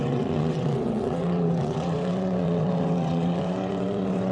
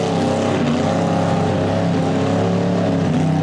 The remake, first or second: first